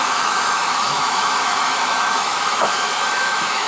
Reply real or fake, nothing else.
fake